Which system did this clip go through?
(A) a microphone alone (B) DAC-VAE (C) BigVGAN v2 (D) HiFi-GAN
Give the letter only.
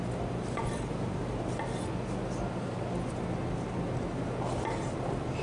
A